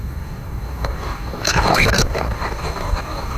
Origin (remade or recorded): remade